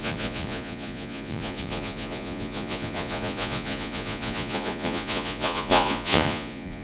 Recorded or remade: remade